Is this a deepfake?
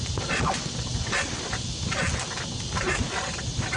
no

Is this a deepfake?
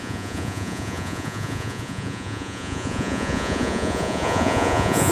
yes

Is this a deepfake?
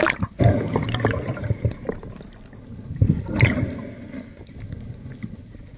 no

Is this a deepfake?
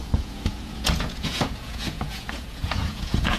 yes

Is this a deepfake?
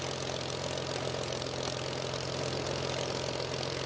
no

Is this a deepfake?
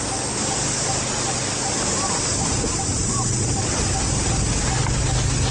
no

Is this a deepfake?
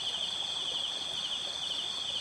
no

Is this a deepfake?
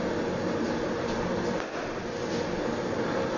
no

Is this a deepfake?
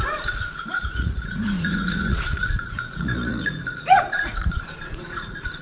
yes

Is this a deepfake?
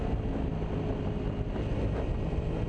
no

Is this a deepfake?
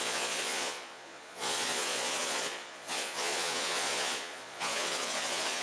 yes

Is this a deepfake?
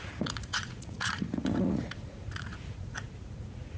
yes